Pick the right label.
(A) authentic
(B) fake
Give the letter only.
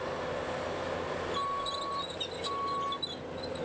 A